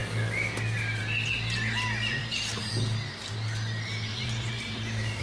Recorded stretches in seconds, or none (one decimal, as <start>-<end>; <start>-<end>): 0.0-2.2; 2.7-4.1